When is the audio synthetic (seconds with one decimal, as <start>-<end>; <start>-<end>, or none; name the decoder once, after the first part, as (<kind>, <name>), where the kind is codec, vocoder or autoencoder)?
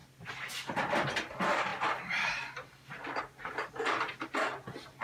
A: none